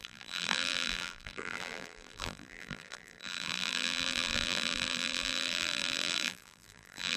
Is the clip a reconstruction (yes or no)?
yes